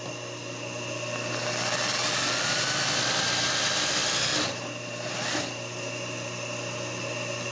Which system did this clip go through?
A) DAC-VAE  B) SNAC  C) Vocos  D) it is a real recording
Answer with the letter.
D